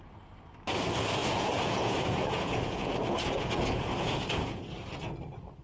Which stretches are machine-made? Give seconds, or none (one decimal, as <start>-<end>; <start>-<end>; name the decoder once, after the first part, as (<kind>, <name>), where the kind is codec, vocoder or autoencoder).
1.2-4.6 (vocoder, Vocos)